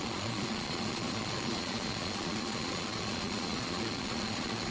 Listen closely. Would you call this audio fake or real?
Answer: fake